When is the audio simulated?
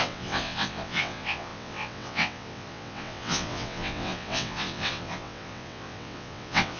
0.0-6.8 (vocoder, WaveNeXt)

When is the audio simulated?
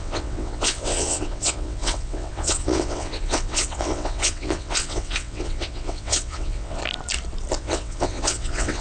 0.0-6.8 (vocoder, WaveNeXt); 7.6-8.8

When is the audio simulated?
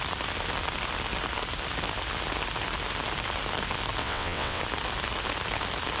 4.0-4.6 (vocoder, WaveNeXt)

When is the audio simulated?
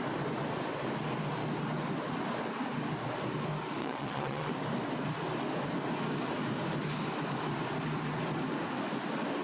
3.8-4.5 (vocoder, WaveNeXt)